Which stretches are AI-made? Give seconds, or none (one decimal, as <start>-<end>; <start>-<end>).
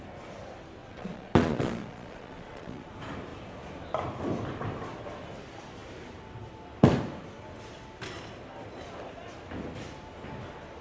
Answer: 0.8-2.9